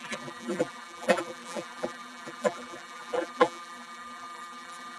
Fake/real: fake